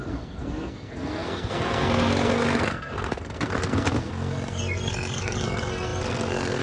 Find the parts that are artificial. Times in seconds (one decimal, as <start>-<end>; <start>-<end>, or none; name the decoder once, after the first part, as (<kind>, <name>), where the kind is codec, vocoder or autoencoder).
0.0-6.6 (codec, SNAC)

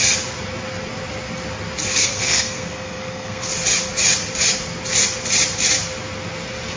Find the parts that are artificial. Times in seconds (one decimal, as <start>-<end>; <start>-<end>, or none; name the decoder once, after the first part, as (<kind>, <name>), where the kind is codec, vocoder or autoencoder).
2.0-3.5 (codec, SNAC)